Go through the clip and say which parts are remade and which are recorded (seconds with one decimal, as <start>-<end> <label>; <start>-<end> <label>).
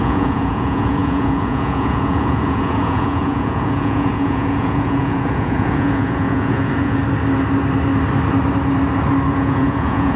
0.0-7.0 remade; 7.0-9.3 recorded; 9.3-10.2 remade